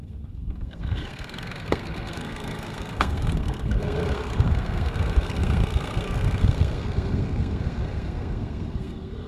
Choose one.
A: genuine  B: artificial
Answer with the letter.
B